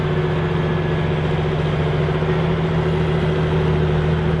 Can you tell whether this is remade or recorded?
recorded